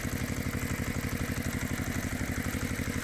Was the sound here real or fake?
real